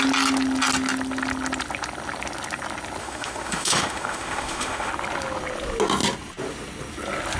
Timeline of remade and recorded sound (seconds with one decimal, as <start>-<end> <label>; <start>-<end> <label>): 0.0-3.0 recorded; 3.0-4.9 remade; 4.9-7.4 recorded